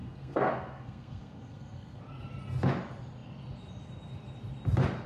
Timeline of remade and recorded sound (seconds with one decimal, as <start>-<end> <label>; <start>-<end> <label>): 0.0-2.0 remade; 2.0-5.1 recorded